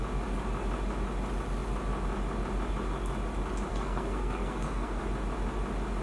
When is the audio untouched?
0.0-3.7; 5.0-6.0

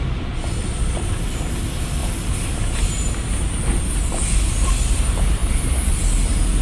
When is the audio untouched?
0.0-6.6

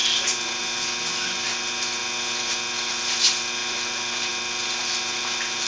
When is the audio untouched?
0.0-5.7

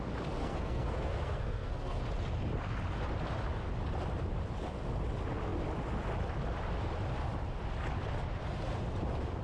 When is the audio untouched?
0.0-0.4; 2.0-9.4

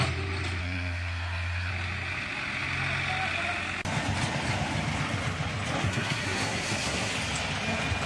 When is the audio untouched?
0.0-0.6; 1.7-5.8; 7.1-8.1

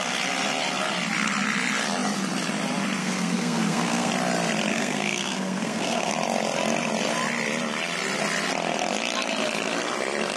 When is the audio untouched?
0.0-3.0; 4.1-4.7; 6.1-10.4